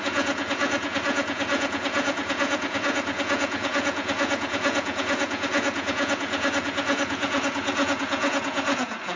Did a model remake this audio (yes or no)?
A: yes